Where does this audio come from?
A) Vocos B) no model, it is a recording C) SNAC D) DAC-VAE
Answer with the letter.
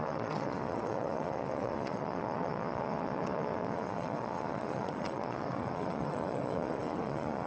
A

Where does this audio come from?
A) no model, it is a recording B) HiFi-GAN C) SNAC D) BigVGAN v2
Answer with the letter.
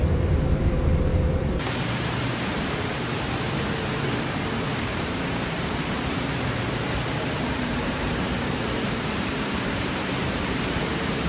D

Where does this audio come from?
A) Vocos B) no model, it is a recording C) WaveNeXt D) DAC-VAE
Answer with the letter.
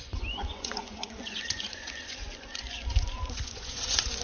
A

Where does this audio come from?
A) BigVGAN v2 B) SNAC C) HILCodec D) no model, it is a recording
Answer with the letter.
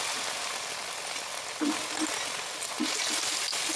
D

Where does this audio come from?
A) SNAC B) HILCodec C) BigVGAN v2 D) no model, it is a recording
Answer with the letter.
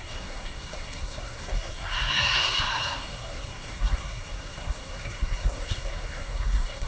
A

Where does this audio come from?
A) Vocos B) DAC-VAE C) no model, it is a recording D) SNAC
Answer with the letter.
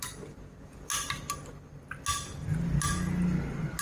C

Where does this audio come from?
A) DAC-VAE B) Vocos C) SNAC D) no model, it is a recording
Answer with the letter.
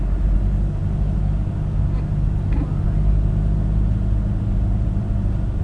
D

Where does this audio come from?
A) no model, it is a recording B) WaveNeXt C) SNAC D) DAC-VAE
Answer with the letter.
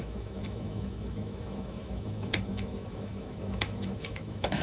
D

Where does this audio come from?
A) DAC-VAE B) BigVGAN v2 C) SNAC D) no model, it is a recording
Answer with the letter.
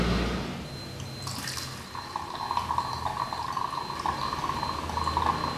D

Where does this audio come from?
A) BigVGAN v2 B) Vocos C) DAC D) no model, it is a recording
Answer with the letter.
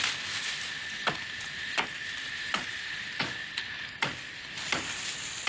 D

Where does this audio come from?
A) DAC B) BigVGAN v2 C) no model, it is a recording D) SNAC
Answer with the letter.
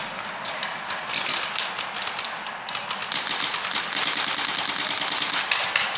C